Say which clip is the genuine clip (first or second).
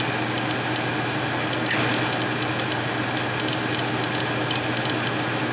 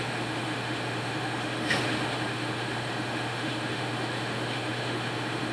first